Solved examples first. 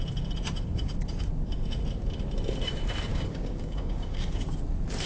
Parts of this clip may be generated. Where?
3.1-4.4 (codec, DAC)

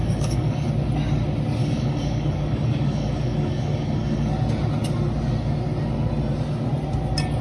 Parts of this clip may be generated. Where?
0.0-0.7 (codec, DAC); 1.6-4.3

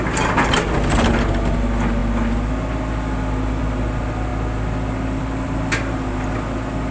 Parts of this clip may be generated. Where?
none

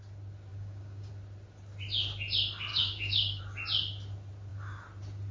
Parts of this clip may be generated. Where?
0.5-1.1 (codec, DAC); 2.7-3.4

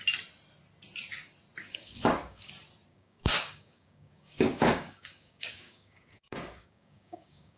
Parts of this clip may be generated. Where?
1.6-2.5 (codec, DAC); 2.9-7.6

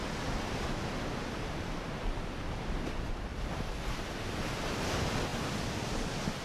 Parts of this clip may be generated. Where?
none

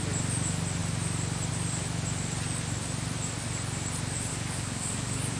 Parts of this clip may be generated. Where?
4.3-5.4 (codec, DAC)